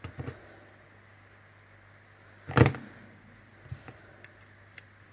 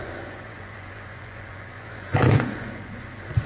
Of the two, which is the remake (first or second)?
second